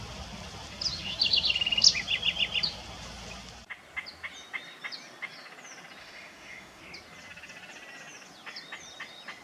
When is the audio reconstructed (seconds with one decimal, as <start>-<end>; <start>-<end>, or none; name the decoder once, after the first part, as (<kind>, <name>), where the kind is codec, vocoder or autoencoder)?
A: 6.0-6.8 (autoencoder, DAC-VAE)